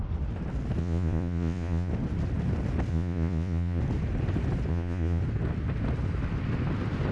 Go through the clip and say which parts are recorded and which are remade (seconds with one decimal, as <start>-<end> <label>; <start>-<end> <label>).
0.0-0.8 recorded; 0.8-1.9 remade; 1.9-2.9 recorded; 2.9-3.8 remade; 3.8-4.7 recorded; 4.7-5.2 remade; 5.2-7.1 recorded